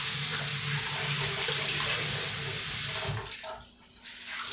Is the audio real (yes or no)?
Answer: yes